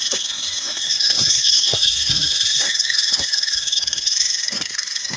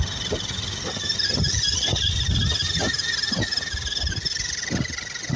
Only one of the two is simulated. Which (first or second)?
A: first